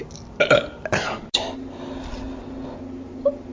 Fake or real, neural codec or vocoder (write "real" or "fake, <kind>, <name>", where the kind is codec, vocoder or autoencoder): real